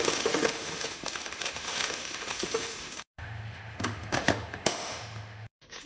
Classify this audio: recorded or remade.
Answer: remade